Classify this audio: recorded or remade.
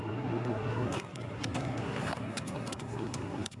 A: remade